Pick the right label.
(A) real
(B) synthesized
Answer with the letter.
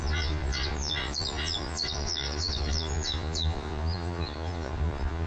B